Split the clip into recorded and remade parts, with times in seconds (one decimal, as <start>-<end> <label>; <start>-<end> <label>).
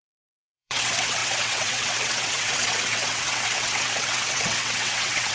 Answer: 0.0-5.3 remade